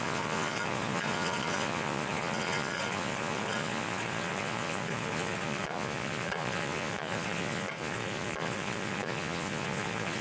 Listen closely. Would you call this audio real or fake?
fake